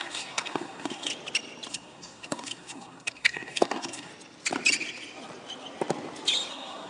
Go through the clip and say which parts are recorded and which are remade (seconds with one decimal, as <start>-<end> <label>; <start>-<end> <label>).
0.0-1.1 remade; 1.1-1.7 recorded; 1.7-4.1 remade; 4.1-6.5 recorded; 6.5-6.9 remade